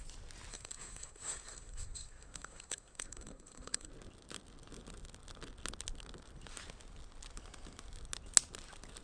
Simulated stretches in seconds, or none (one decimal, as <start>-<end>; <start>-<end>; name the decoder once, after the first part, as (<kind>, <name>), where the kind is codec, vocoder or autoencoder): 0.5-3.9 (codec, SNAC)